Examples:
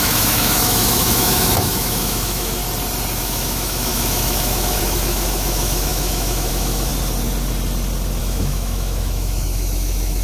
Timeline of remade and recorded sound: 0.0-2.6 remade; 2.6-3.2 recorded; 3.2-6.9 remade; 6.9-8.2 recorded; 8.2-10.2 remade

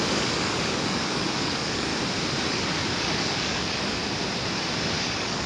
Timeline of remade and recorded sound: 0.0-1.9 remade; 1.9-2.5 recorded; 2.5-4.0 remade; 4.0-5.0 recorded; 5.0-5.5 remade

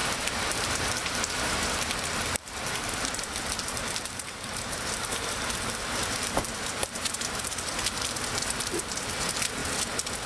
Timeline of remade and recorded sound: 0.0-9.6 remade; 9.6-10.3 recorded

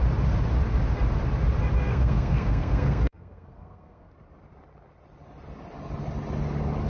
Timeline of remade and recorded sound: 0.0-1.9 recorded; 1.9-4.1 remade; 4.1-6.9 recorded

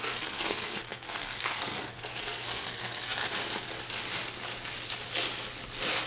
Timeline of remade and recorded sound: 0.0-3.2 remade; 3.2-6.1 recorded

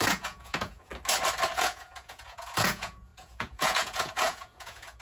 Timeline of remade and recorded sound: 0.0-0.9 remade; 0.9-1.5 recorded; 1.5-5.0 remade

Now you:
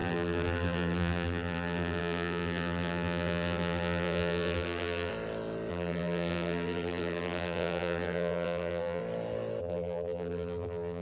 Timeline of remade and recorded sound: 0.0-5.1 remade; 5.1-5.7 recorded; 5.7-9.0 remade; 9.0-9.6 recorded; 9.6-11.0 remade